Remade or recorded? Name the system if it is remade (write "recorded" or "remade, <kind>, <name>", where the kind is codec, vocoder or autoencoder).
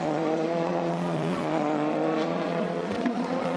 remade, vocoder, Vocos